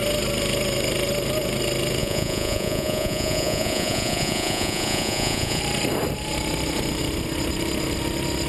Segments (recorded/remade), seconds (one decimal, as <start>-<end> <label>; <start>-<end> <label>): 0.0-2.0 recorded; 2.0-5.6 remade; 5.6-8.5 recorded